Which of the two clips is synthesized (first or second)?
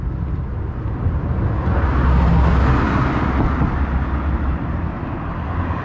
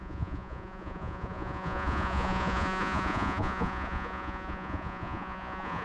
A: second